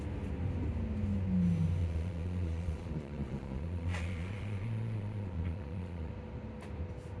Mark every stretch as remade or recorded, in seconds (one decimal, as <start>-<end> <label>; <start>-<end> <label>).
0.0-1.8 recorded; 1.8-6.1 remade; 6.1-7.2 recorded